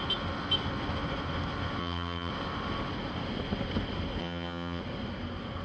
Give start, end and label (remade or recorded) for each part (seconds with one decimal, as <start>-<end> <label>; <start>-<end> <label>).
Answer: 0.0-1.8 recorded; 1.8-2.3 remade; 2.3-4.2 recorded; 4.2-4.8 remade; 4.8-5.6 recorded

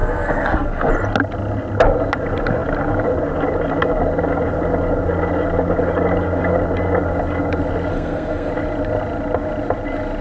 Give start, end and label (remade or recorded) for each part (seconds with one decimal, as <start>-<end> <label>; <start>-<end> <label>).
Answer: 0.0-0.9 remade; 0.9-7.9 recorded; 7.9-8.5 remade; 8.5-10.2 recorded

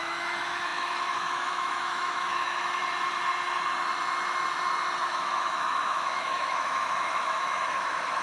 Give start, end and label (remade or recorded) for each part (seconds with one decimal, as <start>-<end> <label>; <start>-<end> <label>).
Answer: 0.0-2.8 remade; 2.8-5.1 recorded; 5.1-8.2 remade